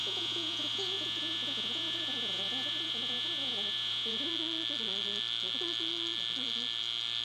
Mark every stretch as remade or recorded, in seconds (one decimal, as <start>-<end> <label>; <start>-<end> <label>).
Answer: 0.0-4.3 remade; 4.3-7.2 recorded